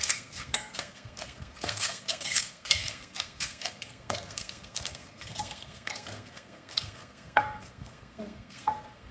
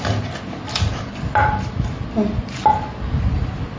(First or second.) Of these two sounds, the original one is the second